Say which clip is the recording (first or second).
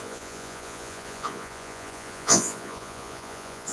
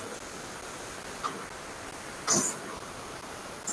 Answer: second